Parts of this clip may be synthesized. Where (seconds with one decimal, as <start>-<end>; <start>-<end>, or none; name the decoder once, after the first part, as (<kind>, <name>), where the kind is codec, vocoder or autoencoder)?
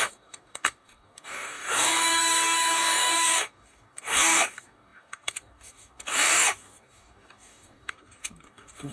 0.0-8.9 (codec, DAC)